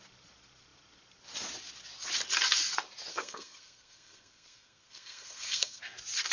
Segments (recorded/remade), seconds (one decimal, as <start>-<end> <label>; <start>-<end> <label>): 0.0-3.1 recorded; 3.1-5.8 remade; 5.8-6.3 recorded